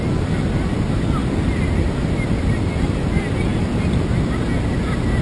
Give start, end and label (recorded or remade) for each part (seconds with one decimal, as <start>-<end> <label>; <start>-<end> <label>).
0.0-5.2 recorded